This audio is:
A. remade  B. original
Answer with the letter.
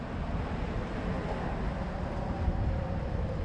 B